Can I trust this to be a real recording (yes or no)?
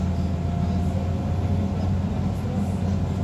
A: yes